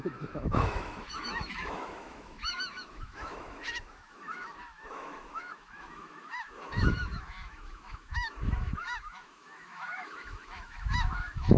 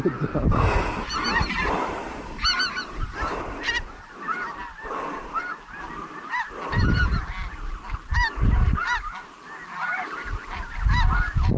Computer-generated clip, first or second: first